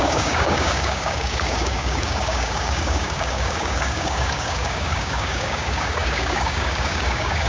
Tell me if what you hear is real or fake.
fake